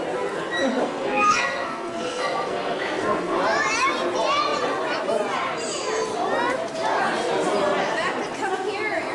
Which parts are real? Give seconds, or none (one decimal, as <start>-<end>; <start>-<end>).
0.0-0.7; 3.4-9.1